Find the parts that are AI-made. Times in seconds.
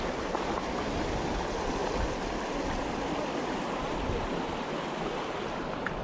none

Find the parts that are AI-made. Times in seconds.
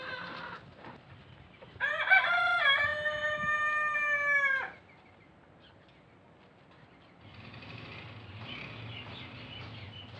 none